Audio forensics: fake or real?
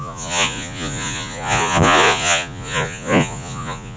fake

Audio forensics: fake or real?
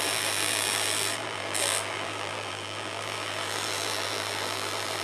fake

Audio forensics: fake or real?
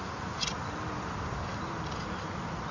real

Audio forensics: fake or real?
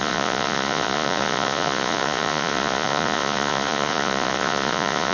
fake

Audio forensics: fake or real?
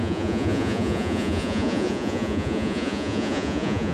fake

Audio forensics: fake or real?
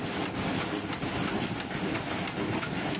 real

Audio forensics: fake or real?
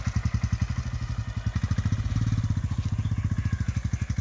real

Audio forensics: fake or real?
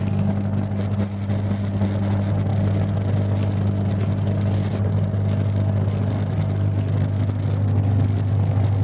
real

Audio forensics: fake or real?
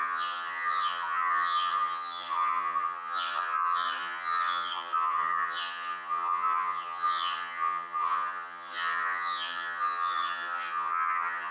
fake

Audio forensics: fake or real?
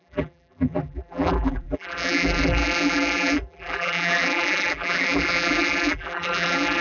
fake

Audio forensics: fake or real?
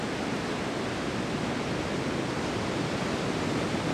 fake